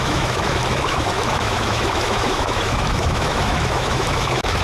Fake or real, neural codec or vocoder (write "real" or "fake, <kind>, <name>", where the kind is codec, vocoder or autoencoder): fake, autoencoder, DAC-VAE